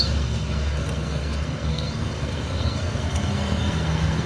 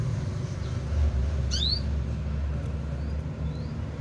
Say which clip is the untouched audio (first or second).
second